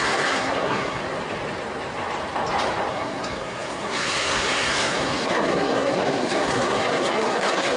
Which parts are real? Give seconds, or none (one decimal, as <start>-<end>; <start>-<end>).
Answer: 1.0-2.9